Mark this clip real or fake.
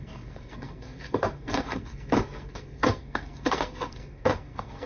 fake